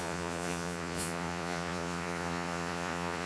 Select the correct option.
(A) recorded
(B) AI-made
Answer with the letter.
B